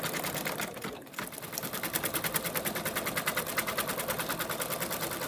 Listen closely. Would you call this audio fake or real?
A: real